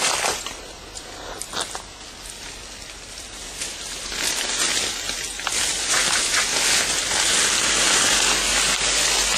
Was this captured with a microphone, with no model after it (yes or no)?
yes